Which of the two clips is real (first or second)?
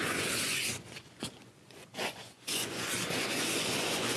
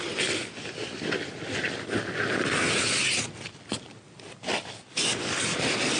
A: second